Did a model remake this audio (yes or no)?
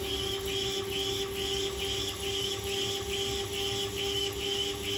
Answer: no